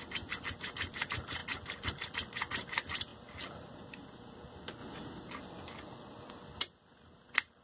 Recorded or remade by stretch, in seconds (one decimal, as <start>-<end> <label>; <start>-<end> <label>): 0.0-7.6 recorded